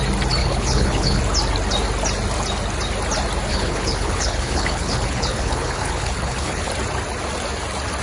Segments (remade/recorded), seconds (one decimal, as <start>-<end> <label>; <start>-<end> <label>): 0.0-0.4 recorded; 0.4-1.2 remade; 1.2-3.5 recorded; 3.5-6.7 remade; 6.7-8.0 recorded